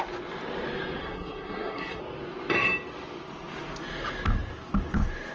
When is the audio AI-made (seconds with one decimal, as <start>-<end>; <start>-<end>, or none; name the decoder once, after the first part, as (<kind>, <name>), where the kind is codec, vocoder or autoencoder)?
1.0-2.0 (codec, SNAC)